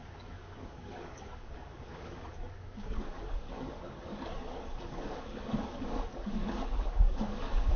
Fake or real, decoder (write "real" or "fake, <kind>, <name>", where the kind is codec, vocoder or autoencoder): fake, codec, DAC